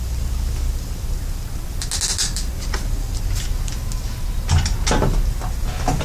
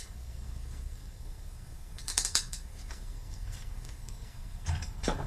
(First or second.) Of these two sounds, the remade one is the second